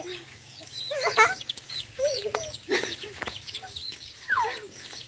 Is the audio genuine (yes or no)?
no